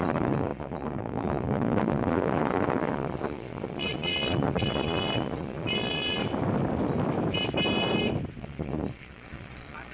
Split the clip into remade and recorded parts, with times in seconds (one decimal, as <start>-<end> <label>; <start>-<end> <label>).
0.0-6.2 remade; 6.2-8.4 recorded; 8.4-9.9 remade